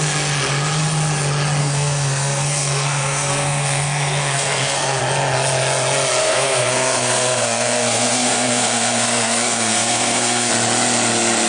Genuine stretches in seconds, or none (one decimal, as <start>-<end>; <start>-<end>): 0.0-1.6; 5.0-6.2; 10.5-11.5